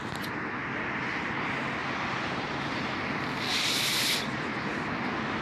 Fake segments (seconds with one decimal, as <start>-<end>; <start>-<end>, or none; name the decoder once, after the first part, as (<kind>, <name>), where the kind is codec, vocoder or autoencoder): 1.8-5.0 (vocoder, BigVGAN v2)